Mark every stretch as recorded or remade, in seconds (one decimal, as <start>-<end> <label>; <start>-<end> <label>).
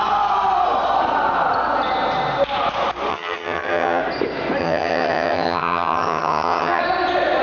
0.0-3.1 recorded; 3.1-4.0 remade; 4.0-4.6 recorded; 4.6-6.8 remade; 6.8-7.4 recorded